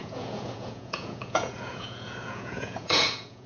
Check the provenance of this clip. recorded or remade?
remade